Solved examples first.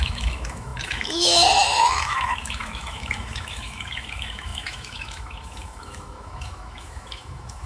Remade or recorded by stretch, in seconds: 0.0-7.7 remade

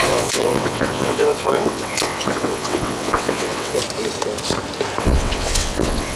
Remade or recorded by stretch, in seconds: 0.0-3.8 remade; 3.8-5.0 recorded; 5.0-6.2 remade